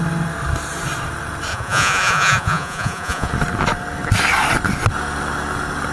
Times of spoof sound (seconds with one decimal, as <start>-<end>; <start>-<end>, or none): 1.5-3.3